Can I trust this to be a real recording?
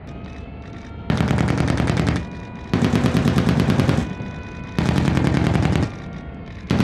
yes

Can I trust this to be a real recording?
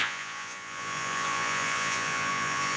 no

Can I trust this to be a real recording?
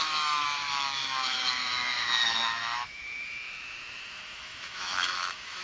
no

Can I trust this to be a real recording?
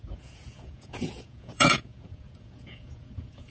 no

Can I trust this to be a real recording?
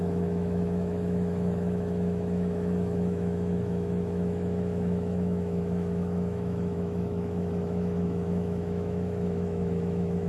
no